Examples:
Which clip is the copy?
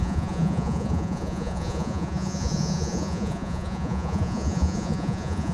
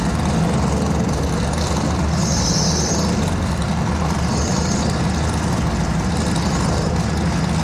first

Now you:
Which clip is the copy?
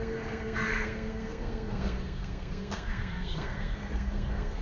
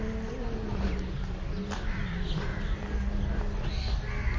first